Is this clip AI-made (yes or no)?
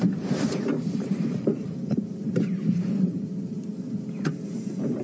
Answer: yes